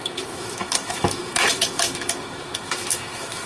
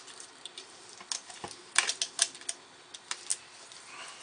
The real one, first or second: second